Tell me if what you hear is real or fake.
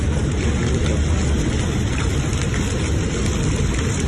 real